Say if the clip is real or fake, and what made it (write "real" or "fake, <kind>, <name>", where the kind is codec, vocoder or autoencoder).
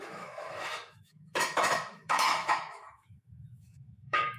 fake, autoencoder, DAC-VAE